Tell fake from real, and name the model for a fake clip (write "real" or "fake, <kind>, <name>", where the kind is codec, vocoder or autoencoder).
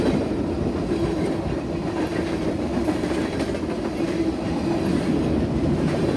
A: real